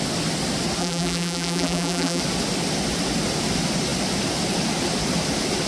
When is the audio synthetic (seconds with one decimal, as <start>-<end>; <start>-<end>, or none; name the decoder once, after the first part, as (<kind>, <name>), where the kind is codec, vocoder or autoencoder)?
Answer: 0.8-2.2 (vocoder, BigVGAN v2)